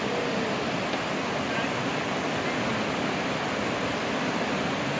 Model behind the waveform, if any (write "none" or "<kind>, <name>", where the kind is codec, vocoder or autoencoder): none